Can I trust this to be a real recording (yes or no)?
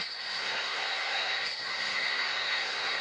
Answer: no